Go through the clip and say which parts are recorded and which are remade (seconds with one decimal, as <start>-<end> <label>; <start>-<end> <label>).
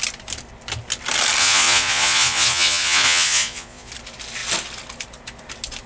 0.0-1.4 recorded; 1.4-3.9 remade; 3.9-5.9 recorded